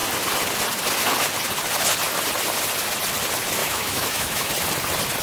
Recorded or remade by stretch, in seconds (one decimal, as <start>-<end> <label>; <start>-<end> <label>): 0.0-3.6 recorded; 3.6-4.5 remade; 4.5-5.2 recorded